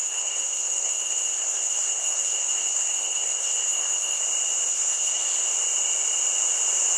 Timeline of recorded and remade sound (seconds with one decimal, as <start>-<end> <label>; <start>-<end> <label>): 0.0-4.2 remade; 4.2-4.7 recorded; 4.7-5.2 remade; 5.2-7.0 recorded